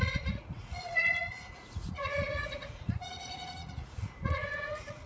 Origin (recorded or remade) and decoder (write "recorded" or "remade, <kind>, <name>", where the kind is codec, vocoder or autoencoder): remade, vocoder, Vocos